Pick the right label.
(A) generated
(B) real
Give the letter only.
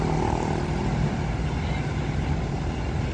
B